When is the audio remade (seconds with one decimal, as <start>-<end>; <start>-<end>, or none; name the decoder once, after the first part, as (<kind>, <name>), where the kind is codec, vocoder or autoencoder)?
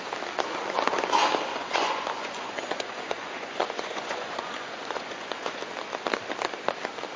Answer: 1.5-5.6 (vocoder, Vocos)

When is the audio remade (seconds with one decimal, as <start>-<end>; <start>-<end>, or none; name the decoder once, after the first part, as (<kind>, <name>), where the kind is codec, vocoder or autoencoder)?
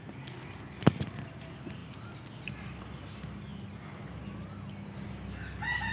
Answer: none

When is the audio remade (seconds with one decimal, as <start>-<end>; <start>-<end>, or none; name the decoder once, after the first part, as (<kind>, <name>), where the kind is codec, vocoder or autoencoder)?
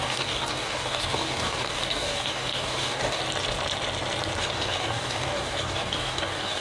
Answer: 0.0-3.2 (codec, DAC); 4.4-6.6